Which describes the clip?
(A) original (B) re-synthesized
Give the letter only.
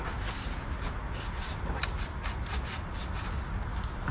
A